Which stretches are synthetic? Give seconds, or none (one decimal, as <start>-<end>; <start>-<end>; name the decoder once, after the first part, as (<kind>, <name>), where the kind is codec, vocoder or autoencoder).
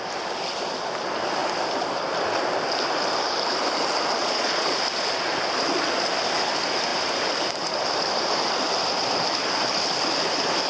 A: 4.2-4.8 (vocoder, Vocos)